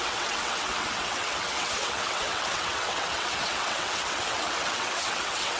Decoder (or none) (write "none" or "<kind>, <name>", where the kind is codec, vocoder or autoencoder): vocoder, WaveNeXt